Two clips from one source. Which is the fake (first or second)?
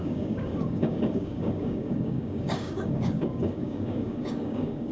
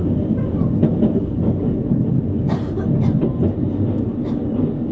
first